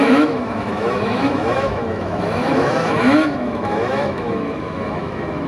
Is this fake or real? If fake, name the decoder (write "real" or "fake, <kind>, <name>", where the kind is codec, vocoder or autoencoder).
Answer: fake, autoencoder, DAC-VAE